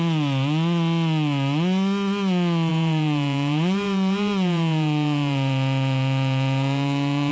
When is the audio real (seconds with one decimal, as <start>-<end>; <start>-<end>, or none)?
0.0-2.7